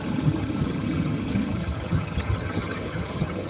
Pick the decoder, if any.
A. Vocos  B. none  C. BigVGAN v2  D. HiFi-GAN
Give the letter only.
D